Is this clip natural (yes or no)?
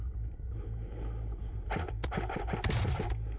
yes